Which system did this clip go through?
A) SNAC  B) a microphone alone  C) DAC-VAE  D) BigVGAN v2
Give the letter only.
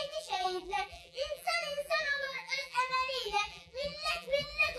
D